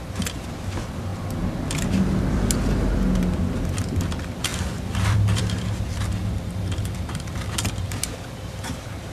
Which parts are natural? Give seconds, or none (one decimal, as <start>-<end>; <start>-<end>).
0.0-4.5